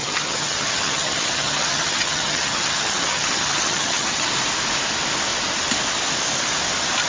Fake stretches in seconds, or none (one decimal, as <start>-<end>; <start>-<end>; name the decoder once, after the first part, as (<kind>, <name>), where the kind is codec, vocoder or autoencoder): 0.0-4.3 (vocoder, HiFi-GAN)